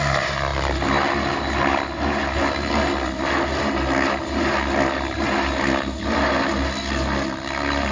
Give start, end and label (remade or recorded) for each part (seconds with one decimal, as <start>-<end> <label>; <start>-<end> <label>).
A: 0.0-7.9 recorded